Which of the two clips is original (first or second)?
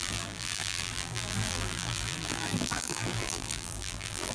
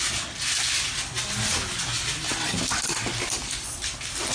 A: second